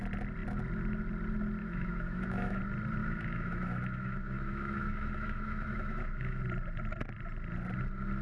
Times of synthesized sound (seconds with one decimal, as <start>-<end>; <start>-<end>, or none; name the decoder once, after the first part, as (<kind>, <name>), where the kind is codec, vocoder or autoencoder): 1.6-2.6 (autoencoder, DAC-VAE); 3.0-6.4